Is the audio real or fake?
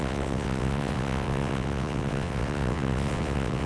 fake